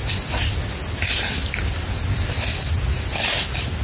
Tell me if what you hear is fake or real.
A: real